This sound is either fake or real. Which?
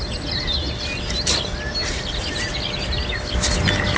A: real